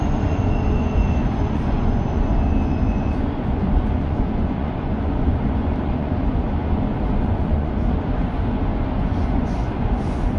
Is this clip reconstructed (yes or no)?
yes